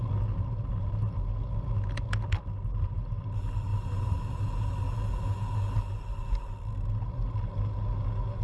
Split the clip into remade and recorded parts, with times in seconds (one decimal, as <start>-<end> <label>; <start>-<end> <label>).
0.0-3.7 recorded; 3.7-4.8 remade; 4.8-8.4 recorded